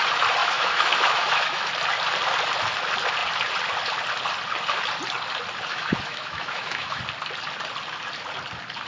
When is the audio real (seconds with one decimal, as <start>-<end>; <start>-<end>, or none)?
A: 0.0-0.4; 1.7-5.7; 7.0-8.9